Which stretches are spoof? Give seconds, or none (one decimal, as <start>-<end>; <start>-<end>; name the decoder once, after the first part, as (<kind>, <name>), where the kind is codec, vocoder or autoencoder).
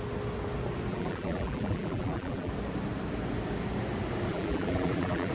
0.9-2.5 (vocoder, BigVGAN v2); 4.3-5.3